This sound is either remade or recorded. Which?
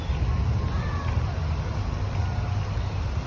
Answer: recorded